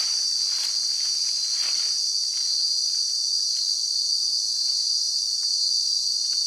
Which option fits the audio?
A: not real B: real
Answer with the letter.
B